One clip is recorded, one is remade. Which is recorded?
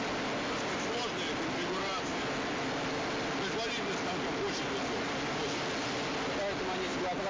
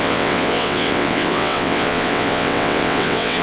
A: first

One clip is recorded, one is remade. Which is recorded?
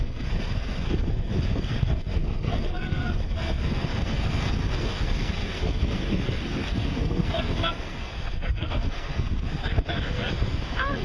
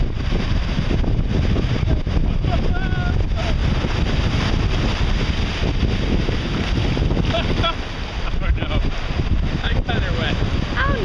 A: second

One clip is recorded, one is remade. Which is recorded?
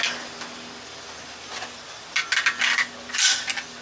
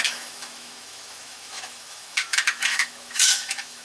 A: first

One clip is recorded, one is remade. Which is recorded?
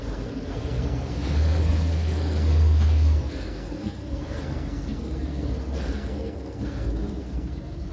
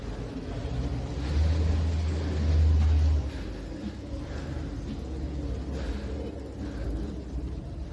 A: second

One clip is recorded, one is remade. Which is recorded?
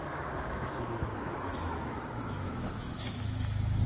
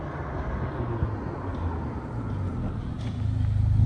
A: second